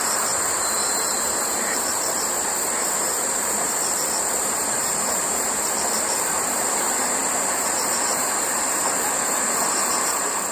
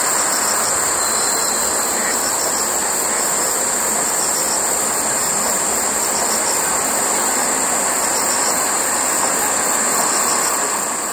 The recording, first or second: second